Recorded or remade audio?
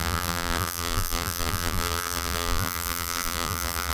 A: remade